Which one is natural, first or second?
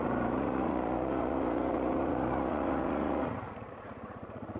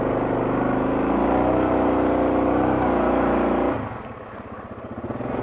second